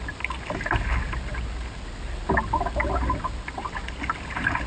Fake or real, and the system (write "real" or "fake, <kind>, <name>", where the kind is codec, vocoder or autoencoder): real